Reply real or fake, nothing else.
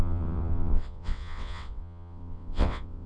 fake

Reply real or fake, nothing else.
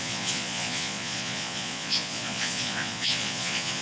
fake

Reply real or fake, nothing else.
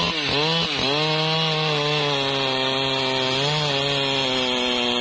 real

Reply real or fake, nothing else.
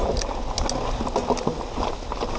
real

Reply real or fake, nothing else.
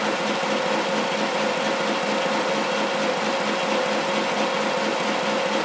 real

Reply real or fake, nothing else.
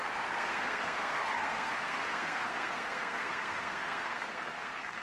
fake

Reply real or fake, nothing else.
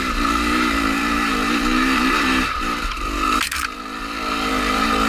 fake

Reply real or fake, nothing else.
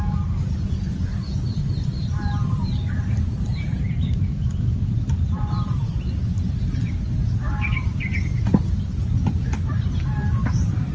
real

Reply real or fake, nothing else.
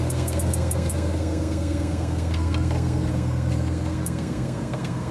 fake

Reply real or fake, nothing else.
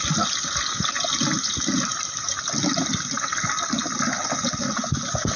real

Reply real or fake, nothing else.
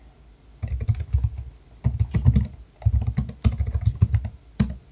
real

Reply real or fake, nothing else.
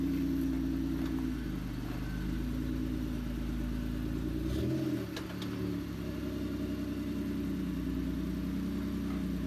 real